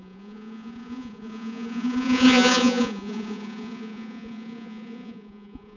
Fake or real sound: fake